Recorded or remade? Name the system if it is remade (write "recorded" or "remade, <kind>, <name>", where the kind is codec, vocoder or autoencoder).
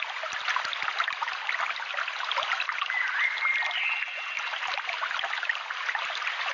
recorded